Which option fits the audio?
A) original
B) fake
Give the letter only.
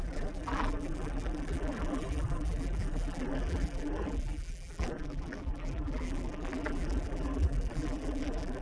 B